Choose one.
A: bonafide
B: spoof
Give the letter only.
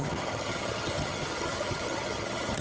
B